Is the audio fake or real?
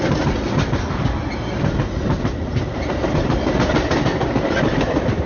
real